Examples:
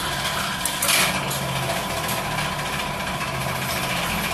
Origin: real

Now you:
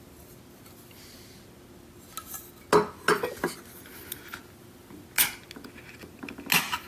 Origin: real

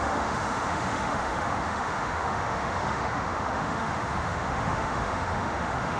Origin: fake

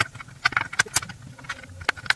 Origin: real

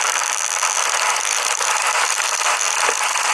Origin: real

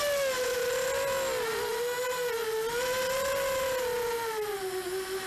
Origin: real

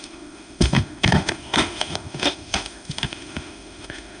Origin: fake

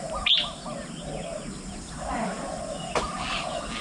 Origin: real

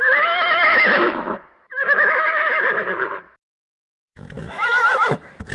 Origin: fake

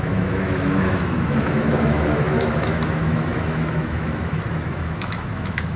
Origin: fake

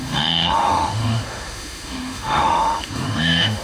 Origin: fake